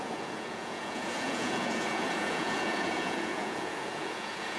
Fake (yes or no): yes